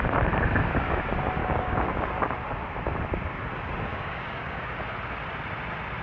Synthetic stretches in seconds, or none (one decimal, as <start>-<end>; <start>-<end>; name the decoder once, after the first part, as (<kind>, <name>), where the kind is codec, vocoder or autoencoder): 1.4-2.0 (codec, DAC); 3.9-4.6

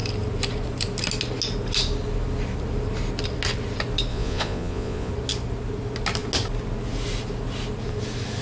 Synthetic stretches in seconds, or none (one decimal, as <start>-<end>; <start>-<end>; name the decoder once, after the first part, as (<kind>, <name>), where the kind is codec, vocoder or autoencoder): 4.1-5.1 (vocoder, Vocos)

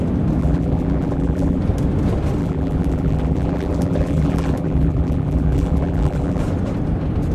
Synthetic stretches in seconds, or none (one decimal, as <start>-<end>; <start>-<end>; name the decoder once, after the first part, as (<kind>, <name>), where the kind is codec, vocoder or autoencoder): 0.4-1.6 (vocoder, BigVGAN v2); 2.4-6.4

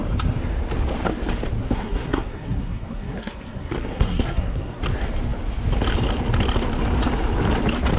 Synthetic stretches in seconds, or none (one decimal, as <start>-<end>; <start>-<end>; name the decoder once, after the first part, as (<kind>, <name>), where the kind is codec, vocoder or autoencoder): 1.6-4.8 (codec, SNAC)

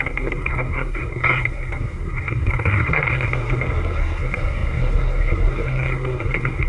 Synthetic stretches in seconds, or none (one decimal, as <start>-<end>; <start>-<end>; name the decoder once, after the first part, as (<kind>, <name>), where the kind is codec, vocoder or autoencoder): 0.0-6.7 (codec, SNAC)

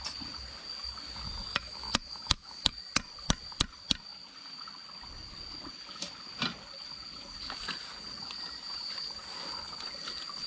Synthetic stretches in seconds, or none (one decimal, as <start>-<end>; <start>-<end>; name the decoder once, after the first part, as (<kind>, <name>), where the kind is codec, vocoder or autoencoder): 1.5-2.7 (autoencoder, DAC-VAE)

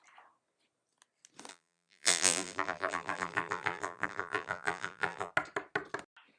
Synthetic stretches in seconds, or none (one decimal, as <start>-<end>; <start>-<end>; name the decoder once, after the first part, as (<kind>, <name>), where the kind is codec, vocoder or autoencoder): 1.5-5.3 (vocoder, BigVGAN v2)

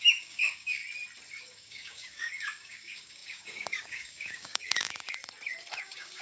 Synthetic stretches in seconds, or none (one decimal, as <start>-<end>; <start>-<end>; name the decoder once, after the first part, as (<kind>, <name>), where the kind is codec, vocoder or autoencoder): 0.0-0.8 (codec, DAC); 1.4-5.2; 5.8-6.2